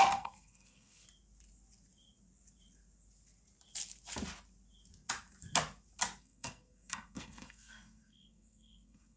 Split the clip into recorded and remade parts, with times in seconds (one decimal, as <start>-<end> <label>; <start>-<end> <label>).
0.0-1.0 remade; 1.0-6.2 recorded; 6.2-9.2 remade